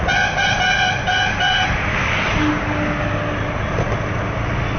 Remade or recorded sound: recorded